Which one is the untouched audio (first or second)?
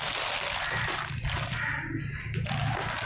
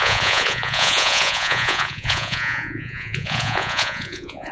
first